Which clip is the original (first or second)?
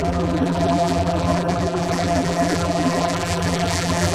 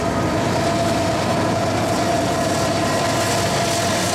second